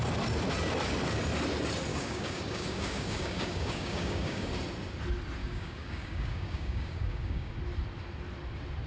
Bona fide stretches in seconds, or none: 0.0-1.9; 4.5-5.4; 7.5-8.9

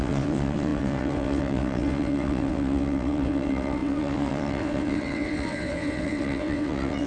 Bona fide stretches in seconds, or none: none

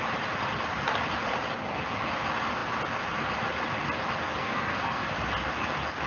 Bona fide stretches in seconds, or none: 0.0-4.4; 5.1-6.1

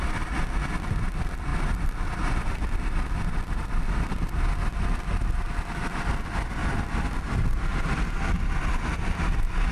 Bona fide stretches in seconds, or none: 0.0-1.5; 4.4-6.6; 7.2-7.7; 8.8-9.7